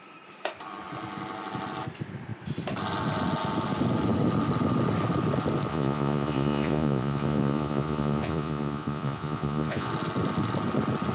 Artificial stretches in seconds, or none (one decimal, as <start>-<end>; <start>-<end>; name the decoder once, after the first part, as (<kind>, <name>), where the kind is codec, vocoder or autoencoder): 5.7-9.9 (vocoder, Vocos)